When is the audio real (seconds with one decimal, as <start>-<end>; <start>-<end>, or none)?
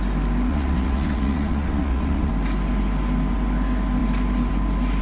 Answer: 0.0-0.5; 2.3-5.0